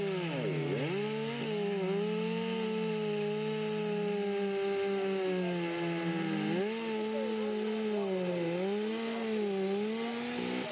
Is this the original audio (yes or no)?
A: yes